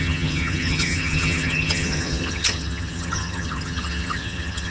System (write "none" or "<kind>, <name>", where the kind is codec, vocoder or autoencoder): vocoder, HiFi-GAN